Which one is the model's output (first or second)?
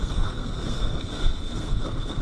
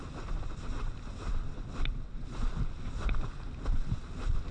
first